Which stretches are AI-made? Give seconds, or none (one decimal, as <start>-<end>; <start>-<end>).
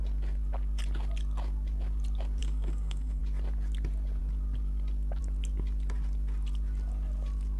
2.4-3.2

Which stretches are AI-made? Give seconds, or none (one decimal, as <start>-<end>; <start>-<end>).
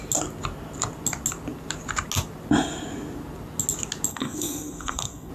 4.1-5.3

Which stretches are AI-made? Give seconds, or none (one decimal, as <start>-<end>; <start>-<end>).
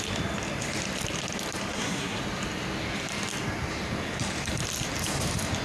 1.7-2.2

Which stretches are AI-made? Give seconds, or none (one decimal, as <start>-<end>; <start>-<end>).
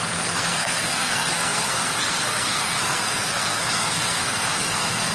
0.0-5.1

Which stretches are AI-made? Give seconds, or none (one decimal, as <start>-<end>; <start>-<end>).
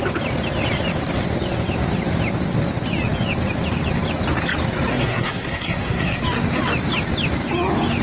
4.9-6.2